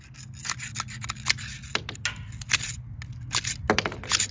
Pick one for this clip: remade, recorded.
recorded